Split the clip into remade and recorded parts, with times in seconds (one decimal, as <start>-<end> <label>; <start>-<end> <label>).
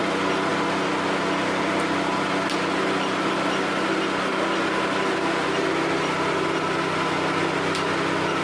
0.0-8.4 recorded